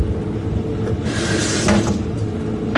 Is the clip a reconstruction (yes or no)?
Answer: no